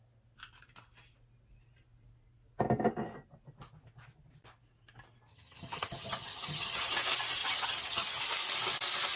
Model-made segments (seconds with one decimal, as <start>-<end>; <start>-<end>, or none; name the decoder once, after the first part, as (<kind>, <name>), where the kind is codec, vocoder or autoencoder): 5.3-6.9 (vocoder, HiFi-GAN); 7.4-8.2